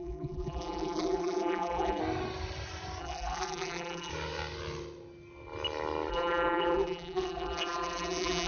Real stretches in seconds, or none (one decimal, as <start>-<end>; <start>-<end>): 2.0-3.0; 4.1-6.1